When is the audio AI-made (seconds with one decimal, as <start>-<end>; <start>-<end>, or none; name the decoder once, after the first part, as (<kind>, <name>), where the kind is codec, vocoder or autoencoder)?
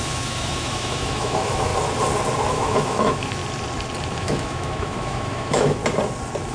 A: 0.0-1.7 (autoencoder, DAC-VAE); 2.5-3.4; 4.2-5.8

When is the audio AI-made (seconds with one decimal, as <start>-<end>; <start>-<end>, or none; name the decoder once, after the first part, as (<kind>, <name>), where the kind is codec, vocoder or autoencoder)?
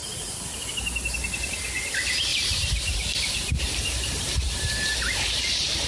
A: 2.3-5.9 (vocoder, BigVGAN v2)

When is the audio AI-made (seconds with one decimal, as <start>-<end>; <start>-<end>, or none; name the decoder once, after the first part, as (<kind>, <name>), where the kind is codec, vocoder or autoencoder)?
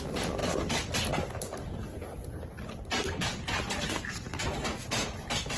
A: none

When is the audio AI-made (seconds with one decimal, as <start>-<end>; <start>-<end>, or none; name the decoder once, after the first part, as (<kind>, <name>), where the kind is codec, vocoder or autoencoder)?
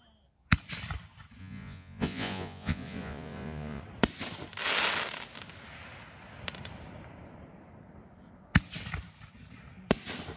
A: 1.4-3.8 (vocoder, Vocos)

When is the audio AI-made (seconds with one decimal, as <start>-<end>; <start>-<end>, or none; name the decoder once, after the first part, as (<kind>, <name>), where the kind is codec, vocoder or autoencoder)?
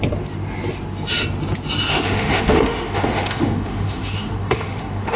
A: 1.9-5.2 (autoencoder, DAC-VAE)